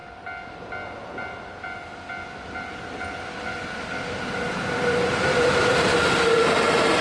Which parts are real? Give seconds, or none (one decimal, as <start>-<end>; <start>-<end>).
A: 0.0-4.2; 5.9-7.0